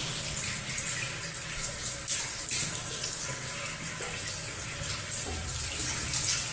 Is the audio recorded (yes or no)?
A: yes